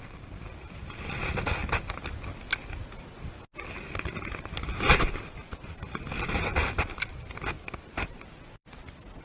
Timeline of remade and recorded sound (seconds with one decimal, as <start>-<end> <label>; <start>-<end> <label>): 0.0-1.6 remade; 1.6-4.9 recorded; 4.9-6.5 remade; 6.5-7.1 recorded; 7.1-9.2 remade